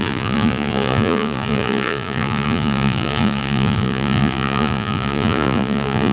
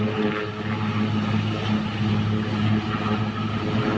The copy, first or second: first